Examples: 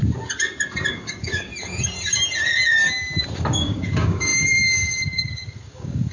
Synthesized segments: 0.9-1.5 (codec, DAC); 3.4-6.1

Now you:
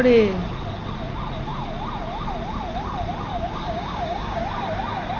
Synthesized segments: 3.3-4.4 (codec, DAC)

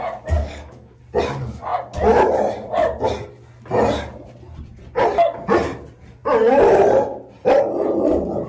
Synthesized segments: 0.4-1.0 (codec, DAC)

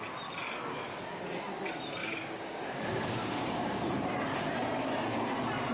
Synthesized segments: 2.0-3.9 (codec, DAC)

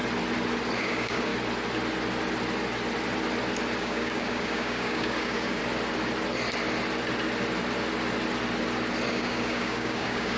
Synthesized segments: 0.8-1.3 (codec, DAC); 3.8-5.6; 9.1-10.4

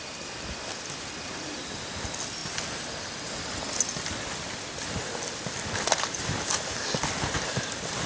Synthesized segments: none

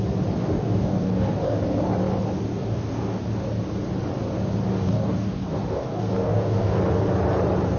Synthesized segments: 0.4-1.6 (codec, DAC); 2.5-3.2; 4.7-6.8